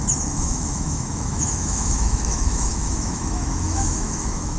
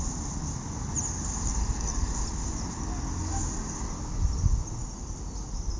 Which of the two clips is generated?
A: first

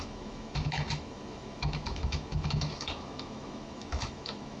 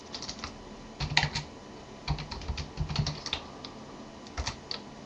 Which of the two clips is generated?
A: first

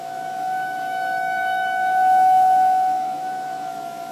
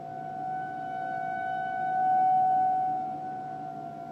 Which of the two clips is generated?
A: first